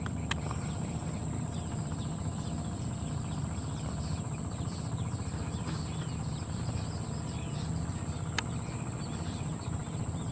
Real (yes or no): yes